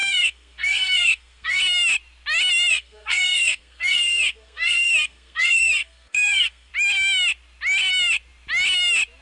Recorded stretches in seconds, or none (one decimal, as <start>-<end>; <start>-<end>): 1.6-2.7; 6.7-9.2